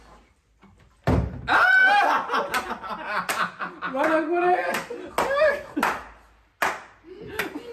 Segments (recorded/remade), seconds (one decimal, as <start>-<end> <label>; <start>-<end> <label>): 0.0-7.7 recorded